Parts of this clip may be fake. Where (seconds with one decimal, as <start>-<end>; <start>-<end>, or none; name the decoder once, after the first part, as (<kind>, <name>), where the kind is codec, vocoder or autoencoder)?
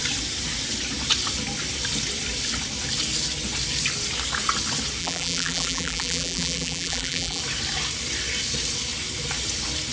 5.0-7.4 (vocoder, BigVGAN v2)